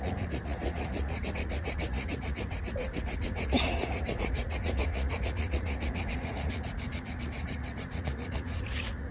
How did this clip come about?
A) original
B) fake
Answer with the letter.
B